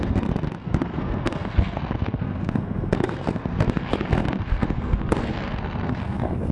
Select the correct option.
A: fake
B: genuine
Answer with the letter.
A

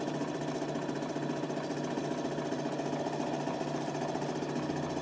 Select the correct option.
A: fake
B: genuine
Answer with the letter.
B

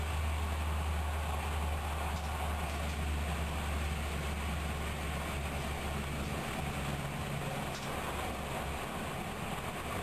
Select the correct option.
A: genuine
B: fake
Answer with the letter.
A